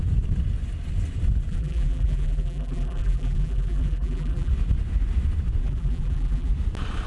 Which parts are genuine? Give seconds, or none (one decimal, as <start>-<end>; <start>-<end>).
0.0-1.5; 4.5-5.6; 6.5-7.1